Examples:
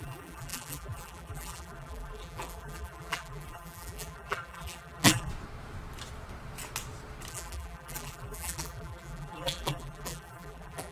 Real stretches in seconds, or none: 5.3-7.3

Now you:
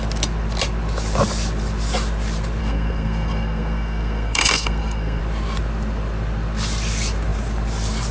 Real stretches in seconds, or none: 0.0-2.6; 5.2-8.1